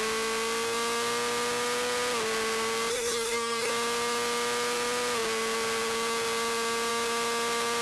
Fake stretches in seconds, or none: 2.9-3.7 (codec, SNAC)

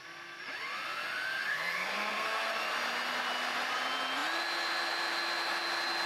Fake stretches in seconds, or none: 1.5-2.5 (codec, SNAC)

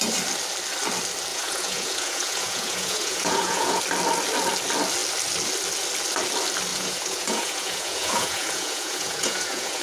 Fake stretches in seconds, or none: 1.3-3.8 (vocoder, Vocos); 6.7-9.8